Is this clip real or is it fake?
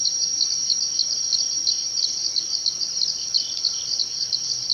fake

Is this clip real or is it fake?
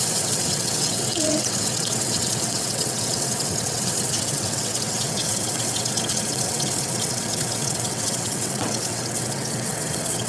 fake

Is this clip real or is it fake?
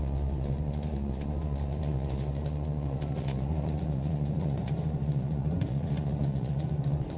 fake